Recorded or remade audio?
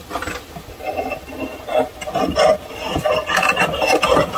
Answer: recorded